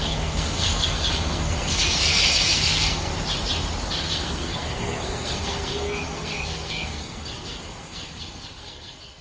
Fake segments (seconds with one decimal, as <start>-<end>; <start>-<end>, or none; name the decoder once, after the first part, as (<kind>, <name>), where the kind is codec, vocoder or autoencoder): 0.0-3.1 (codec, SNAC); 3.9-9.2